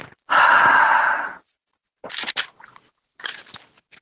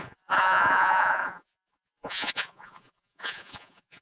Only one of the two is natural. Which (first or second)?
first